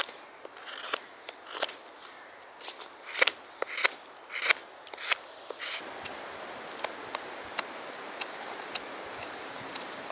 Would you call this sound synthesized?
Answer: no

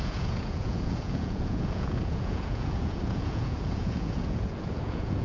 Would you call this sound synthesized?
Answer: yes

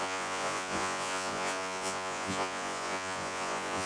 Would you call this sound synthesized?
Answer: yes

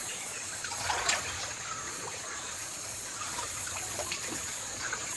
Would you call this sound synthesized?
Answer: yes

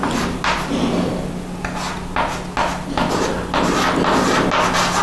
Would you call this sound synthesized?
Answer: no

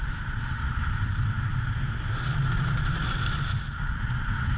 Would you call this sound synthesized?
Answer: no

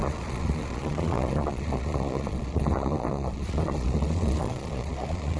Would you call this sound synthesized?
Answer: yes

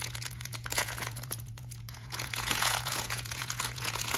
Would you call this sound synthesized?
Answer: yes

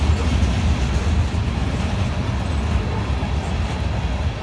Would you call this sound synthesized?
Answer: no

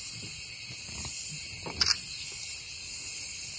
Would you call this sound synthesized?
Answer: no